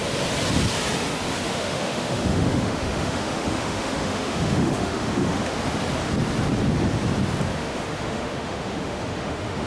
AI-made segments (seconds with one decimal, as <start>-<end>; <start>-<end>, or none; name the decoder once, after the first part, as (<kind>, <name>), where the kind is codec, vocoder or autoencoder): 1.4-5.5 (autoencoder, DAC-VAE); 7.6-9.7